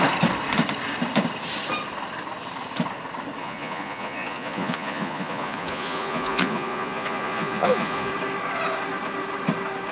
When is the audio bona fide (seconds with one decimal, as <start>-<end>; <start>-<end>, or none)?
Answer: 0.0-3.4; 8.1-9.9